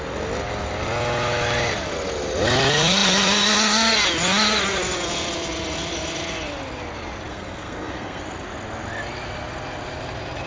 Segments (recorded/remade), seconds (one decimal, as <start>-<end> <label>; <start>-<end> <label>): 0.0-7.3 recorded; 7.3-8.2 remade; 8.2-10.5 recorded